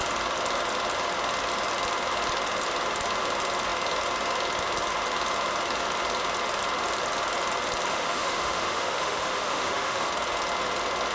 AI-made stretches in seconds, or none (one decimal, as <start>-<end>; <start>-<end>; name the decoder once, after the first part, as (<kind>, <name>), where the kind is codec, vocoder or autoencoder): 7.9-10.1 (autoencoder, DAC-VAE)